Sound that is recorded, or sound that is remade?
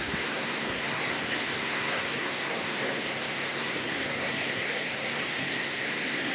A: remade